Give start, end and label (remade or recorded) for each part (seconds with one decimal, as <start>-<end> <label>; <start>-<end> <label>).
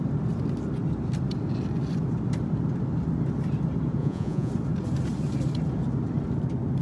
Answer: 0.0-4.0 recorded; 4.0-4.5 remade; 4.5-6.8 recorded